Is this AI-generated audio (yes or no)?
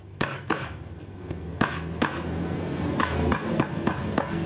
yes